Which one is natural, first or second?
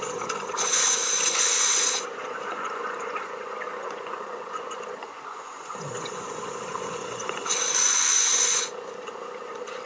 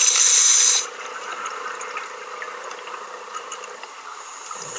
second